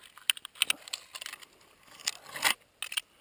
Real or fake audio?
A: real